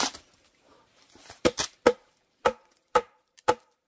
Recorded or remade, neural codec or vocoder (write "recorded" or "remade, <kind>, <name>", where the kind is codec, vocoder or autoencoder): remade, vocoder, BigVGAN v2